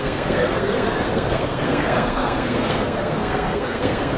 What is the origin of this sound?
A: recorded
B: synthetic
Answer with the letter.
B